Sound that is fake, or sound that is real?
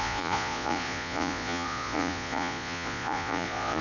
fake